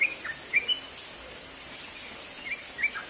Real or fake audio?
real